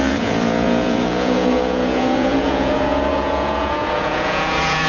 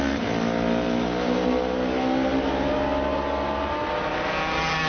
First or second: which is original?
second